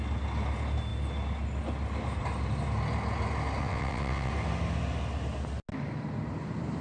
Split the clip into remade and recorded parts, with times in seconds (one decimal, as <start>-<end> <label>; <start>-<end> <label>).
0.0-3.6 recorded; 3.6-4.3 remade; 4.3-6.8 recorded